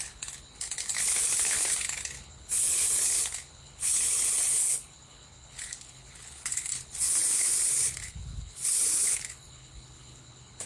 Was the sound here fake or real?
fake